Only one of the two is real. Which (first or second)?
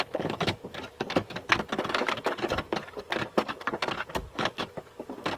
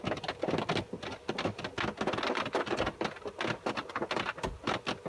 second